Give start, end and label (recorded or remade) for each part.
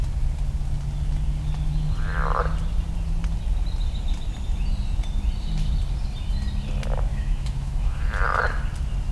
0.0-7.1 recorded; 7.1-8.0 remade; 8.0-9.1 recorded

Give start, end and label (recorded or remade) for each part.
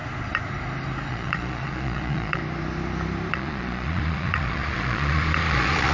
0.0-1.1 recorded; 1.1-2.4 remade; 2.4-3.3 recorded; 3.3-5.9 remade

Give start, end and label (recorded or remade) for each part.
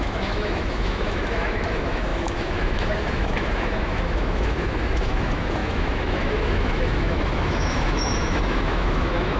0.0-9.4 remade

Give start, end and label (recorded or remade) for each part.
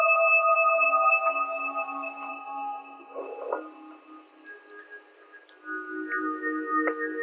0.0-2.3 recorded; 2.3-3.2 remade; 3.2-7.2 recorded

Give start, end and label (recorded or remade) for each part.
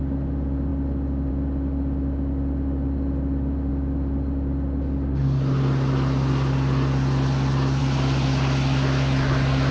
0.0-9.7 recorded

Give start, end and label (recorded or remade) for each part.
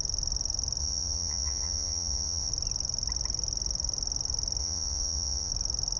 0.0-0.8 recorded; 0.8-2.5 remade; 2.5-4.6 recorded; 4.6-5.5 remade; 5.5-6.0 recorded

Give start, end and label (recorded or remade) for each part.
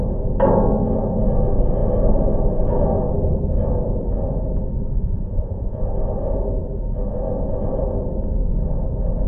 0.0-5.0 recorded; 5.0-5.8 remade; 5.8-9.3 recorded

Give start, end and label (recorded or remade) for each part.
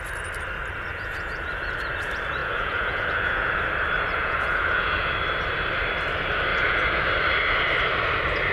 0.0-0.9 recorded; 0.9-1.5 remade; 1.5-2.4 recorded; 2.4-3.6 remade; 3.6-4.2 recorded; 4.2-5.1 remade; 5.1-6.5 recorded; 6.5-7.0 remade; 7.0-8.5 recorded